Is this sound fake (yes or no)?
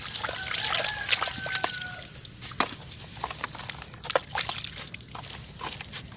no